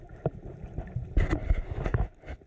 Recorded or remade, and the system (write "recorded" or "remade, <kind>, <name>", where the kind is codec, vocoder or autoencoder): recorded